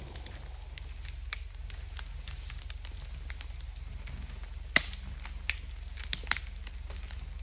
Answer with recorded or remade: recorded